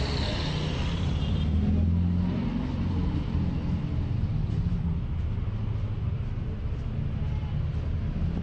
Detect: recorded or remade recorded